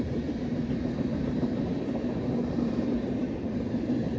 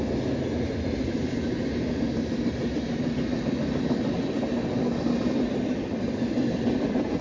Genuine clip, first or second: second